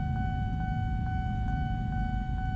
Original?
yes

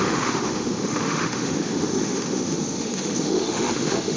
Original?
no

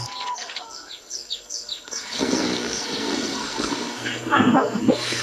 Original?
no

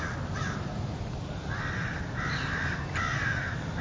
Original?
yes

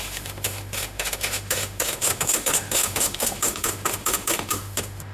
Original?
no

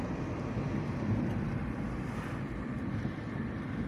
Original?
yes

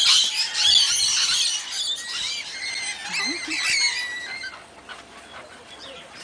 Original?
yes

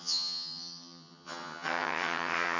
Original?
no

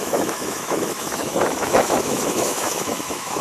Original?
no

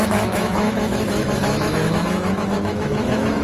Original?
no